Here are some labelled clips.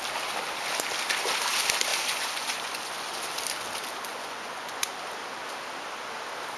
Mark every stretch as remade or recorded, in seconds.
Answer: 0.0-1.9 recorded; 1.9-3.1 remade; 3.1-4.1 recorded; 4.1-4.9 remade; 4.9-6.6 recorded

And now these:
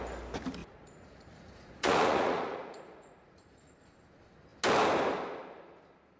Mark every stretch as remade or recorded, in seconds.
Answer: 0.0-0.6 recorded; 0.6-3.6 remade; 3.6-6.2 recorded

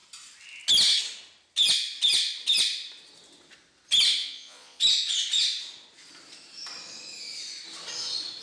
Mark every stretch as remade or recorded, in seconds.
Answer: 0.0-4.2 recorded; 4.2-4.8 remade; 4.8-8.4 recorded